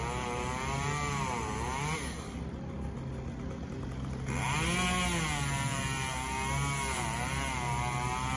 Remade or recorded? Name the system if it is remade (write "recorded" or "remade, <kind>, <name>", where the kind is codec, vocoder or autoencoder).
recorded